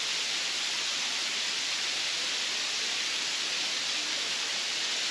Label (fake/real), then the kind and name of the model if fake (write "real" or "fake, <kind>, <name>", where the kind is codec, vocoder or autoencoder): real